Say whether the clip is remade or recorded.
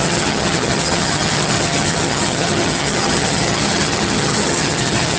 remade